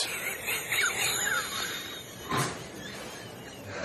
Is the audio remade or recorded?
remade